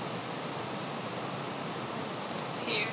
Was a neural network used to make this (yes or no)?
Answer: no